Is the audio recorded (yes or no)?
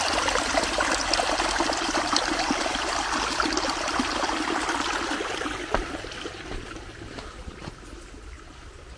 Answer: yes